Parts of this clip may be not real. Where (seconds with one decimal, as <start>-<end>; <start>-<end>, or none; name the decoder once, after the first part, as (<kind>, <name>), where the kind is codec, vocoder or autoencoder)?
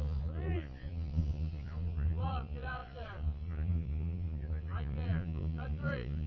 0.0-6.3 (vocoder, Vocos)